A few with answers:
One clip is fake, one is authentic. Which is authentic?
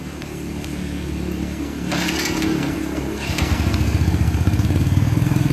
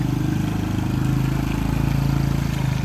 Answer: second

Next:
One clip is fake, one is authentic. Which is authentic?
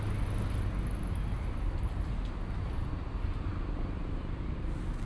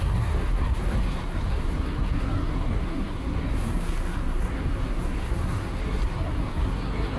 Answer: first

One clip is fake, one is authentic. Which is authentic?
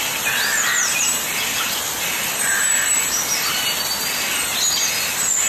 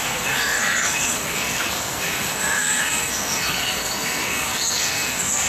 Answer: first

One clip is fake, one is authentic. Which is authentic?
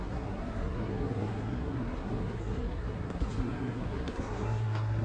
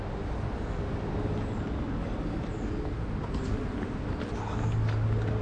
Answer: second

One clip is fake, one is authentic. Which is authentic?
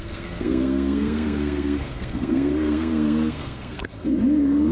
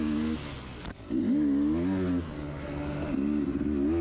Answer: second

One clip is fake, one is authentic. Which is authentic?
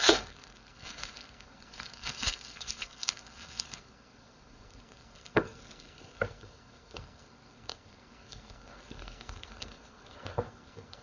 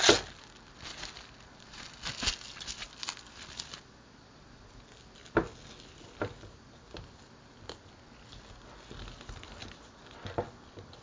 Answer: second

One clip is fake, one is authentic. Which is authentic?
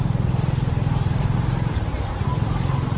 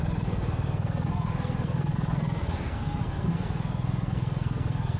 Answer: first